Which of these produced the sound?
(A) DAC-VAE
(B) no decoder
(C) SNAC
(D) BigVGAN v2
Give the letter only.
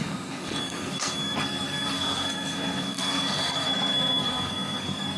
C